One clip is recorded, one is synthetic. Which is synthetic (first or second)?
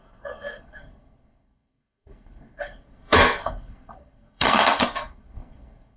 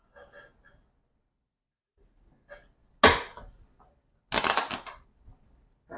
first